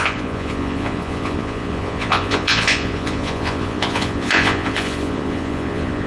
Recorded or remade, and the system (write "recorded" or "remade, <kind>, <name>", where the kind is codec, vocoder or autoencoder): remade, vocoder, Vocos